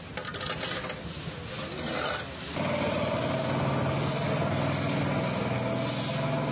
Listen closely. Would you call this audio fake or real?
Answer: real